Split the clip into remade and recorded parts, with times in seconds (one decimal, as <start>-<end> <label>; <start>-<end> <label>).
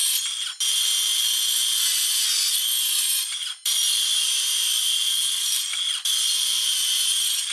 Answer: 0.0-0.6 remade; 0.6-2.9 recorded; 2.9-7.5 remade